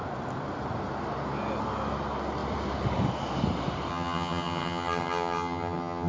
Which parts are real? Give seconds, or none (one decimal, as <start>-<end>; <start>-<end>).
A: 0.0-3.9